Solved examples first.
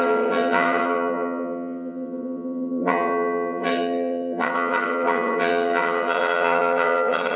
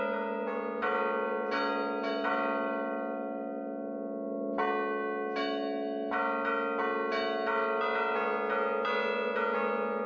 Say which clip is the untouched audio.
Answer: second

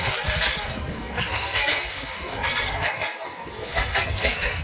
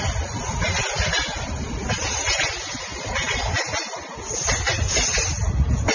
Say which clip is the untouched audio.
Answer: second